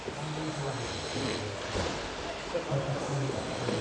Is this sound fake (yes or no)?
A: no